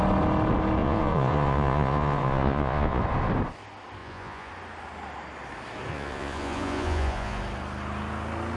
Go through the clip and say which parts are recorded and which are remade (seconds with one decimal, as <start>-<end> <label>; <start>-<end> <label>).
0.0-0.8 recorded; 0.8-3.0 remade; 3.0-4.0 recorded; 4.0-4.5 remade; 4.5-5.9 recorded; 5.9-7.4 remade; 7.4-8.6 recorded